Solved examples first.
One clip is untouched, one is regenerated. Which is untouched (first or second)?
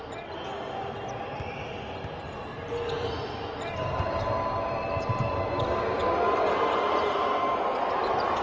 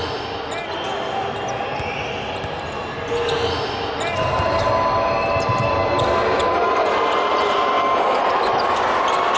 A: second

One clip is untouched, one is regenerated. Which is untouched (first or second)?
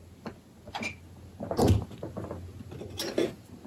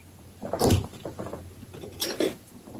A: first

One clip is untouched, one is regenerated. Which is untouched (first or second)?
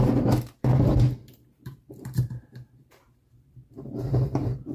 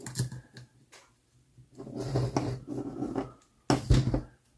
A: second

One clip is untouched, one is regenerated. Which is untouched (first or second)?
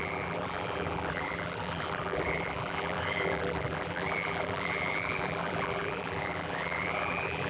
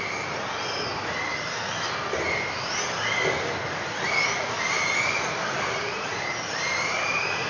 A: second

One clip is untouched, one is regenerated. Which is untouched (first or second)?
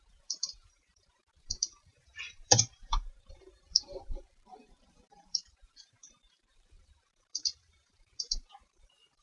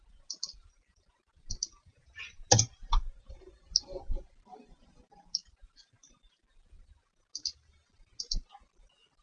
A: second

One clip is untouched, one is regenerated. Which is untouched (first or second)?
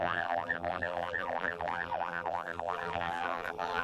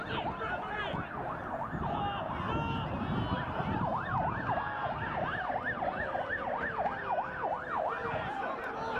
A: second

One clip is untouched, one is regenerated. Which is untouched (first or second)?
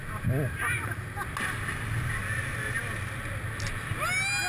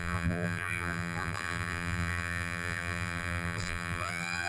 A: first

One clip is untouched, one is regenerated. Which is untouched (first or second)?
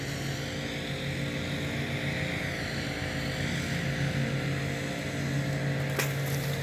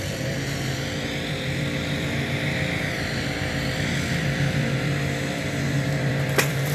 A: first